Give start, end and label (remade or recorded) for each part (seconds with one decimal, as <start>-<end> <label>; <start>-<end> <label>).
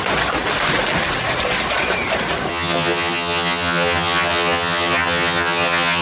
0.0-2.5 recorded; 2.5-6.0 remade